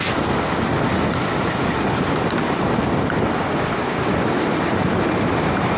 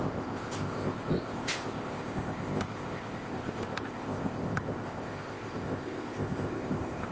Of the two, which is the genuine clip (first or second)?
first